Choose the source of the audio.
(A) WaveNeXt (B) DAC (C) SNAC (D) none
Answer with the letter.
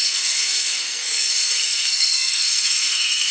C